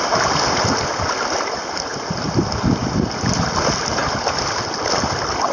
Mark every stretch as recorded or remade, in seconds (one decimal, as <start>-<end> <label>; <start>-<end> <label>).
0.0-5.5 recorded